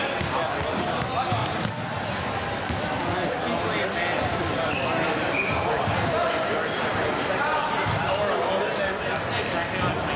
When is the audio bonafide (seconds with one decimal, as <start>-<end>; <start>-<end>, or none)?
0.0-10.2